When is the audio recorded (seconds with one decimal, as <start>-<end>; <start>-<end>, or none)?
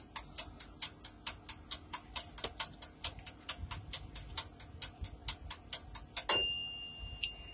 0.0-7.5